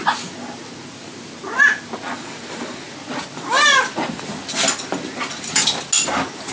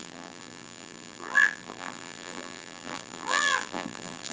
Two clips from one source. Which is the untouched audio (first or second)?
first